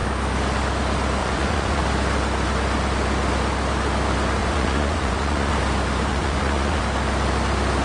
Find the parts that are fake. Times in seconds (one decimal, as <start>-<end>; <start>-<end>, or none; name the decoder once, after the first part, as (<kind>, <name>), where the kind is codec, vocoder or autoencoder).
1.2-1.8 (vocoder, Vocos); 4.4-5.5; 6.1-6.8